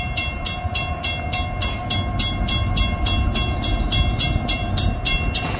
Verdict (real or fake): real